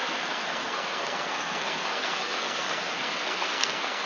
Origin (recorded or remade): remade